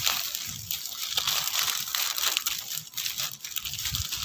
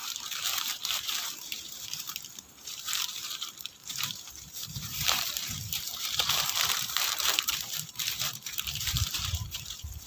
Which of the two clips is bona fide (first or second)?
first